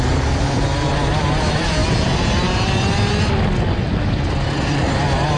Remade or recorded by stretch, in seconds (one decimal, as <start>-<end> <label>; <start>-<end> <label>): 0.0-5.4 recorded

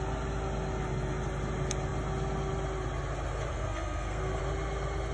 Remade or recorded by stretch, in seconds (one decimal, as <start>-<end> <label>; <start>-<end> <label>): 0.0-3.5 recorded; 3.5-4.4 remade; 4.4-5.1 recorded

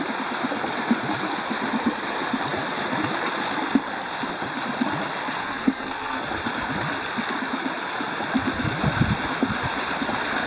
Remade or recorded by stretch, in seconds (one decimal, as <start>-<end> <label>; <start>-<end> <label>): 0.0-5.4 recorded; 5.4-6.2 remade; 6.2-10.5 recorded

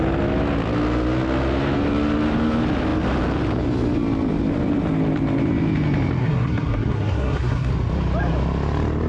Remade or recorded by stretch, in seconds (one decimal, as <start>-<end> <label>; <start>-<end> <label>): 0.0-6.2 recorded; 6.2-7.7 remade; 7.7-9.1 recorded

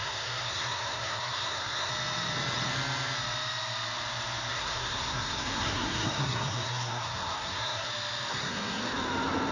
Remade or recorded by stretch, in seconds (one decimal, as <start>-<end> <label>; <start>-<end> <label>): 0.0-1.9 remade; 1.9-4.5 recorded; 4.5-7.9 remade; 7.9-8.3 recorded; 8.3-8.8 remade; 8.8-9.5 recorded

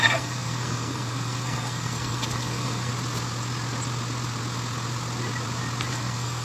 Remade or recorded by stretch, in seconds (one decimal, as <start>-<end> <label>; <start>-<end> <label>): 0.0-2.9 remade; 2.9-5.9 recorded; 5.9-6.4 remade